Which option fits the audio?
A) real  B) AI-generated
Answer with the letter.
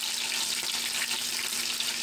A